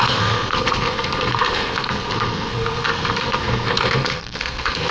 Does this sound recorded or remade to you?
remade